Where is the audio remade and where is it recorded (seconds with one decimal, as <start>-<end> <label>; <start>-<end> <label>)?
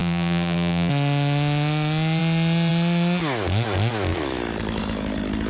0.0-0.9 remade; 0.9-5.5 recorded